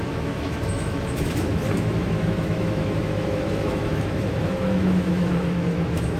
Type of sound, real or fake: fake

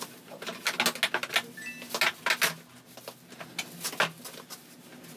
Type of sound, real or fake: real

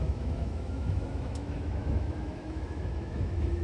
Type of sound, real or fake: fake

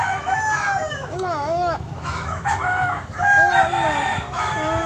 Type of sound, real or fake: fake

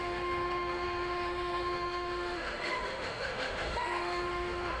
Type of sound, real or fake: fake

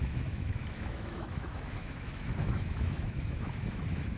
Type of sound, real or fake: fake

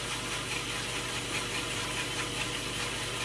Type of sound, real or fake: real